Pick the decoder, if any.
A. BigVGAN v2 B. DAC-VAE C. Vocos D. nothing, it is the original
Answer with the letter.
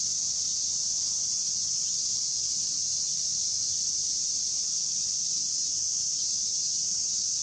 D